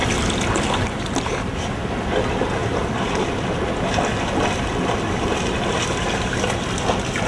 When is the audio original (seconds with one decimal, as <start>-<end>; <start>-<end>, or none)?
0.0-7.3